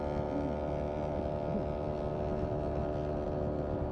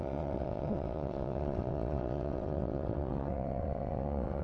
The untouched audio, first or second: first